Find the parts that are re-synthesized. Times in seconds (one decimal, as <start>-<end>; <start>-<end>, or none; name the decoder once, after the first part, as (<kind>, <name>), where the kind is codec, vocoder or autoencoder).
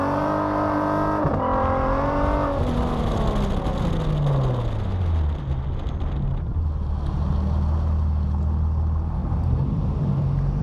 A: 9.2-10.6 (vocoder, BigVGAN v2)